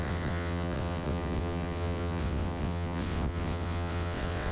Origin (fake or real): fake